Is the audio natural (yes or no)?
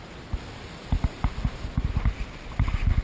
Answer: yes